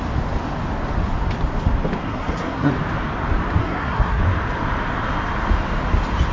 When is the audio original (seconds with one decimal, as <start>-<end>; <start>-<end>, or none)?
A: 0.0-2.0; 2.7-3.6; 4.2-6.3